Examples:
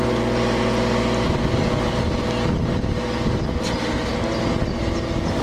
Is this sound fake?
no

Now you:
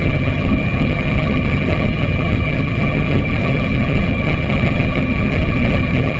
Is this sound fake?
yes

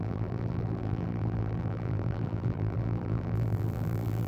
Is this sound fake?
yes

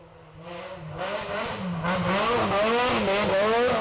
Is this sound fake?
no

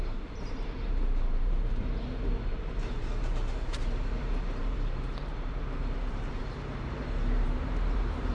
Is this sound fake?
yes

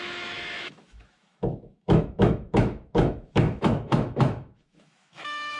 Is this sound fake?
yes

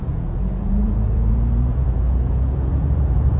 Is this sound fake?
yes